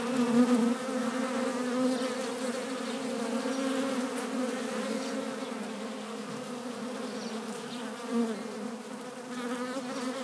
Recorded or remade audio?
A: recorded